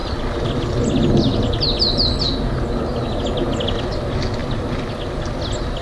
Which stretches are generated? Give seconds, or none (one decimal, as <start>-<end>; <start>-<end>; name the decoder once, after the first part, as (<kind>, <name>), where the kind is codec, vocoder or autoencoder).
none